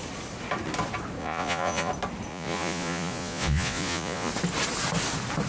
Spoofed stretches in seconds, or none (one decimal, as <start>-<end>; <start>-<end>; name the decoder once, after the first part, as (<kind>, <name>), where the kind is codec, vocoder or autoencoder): 1.2-1.9 (vocoder, Vocos); 2.3-4.3